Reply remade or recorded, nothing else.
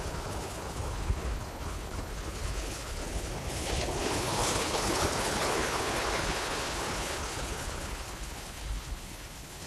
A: remade